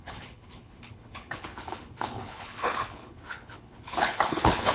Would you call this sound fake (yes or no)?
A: yes